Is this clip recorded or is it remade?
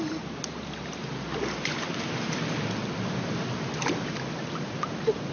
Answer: recorded